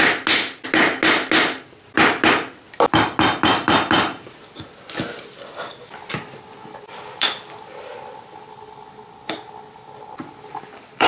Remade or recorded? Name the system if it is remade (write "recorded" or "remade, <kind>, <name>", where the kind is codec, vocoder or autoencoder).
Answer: recorded